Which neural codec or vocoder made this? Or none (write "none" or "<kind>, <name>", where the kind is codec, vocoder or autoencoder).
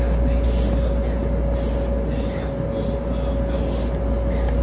none